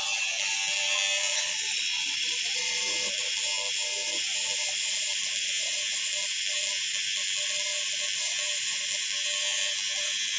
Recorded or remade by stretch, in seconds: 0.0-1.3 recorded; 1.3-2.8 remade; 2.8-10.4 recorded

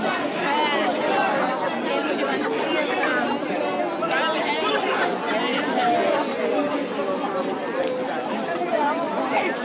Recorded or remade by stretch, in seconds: 0.0-9.6 recorded